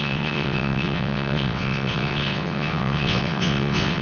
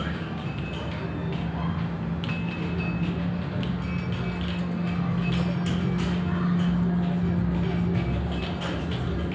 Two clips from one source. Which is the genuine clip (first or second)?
second